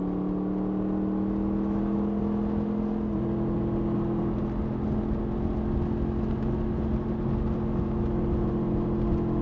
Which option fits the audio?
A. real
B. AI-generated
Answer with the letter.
A